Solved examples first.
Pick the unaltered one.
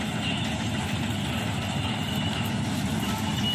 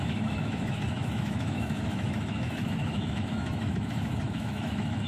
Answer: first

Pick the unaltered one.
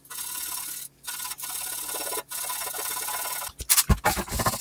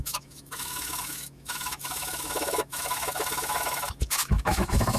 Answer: first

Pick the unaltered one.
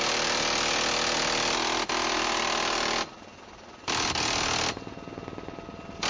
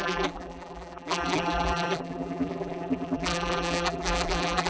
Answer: first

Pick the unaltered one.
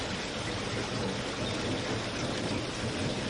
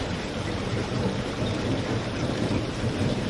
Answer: first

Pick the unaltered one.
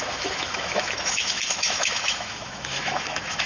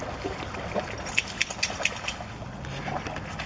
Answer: second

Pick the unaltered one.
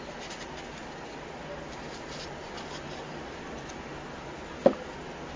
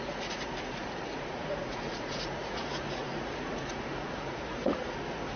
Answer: first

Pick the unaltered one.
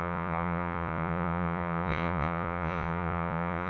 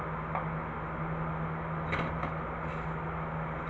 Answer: second